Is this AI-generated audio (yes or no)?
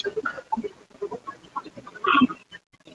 no